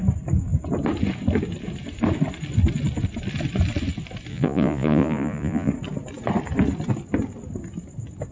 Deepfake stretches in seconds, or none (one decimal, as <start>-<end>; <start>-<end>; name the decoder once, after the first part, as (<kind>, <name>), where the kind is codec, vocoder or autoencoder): 4.3-5.7 (vocoder, Vocos)